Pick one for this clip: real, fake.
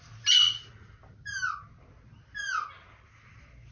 real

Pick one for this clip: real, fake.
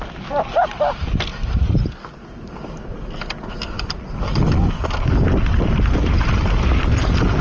real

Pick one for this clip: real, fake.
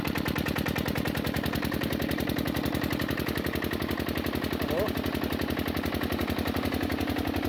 real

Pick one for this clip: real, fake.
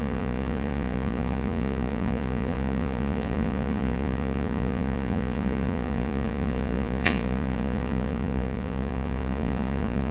fake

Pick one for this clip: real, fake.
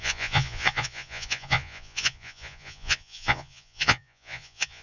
fake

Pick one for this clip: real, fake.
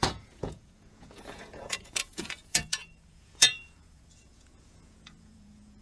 fake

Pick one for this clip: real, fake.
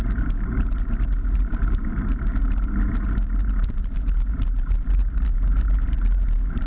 fake